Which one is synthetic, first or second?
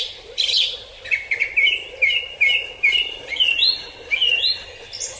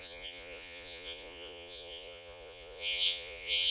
second